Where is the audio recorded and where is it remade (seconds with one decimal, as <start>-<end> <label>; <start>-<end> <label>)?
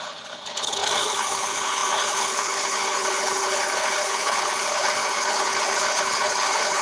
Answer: 0.0-6.8 remade